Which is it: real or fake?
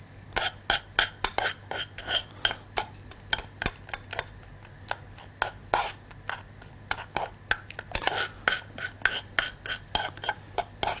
real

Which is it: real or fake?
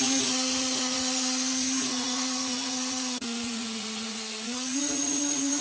fake